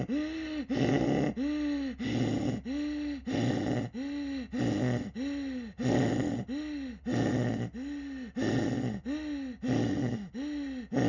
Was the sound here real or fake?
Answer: real